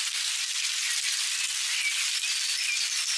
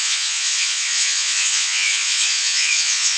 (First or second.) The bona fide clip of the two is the first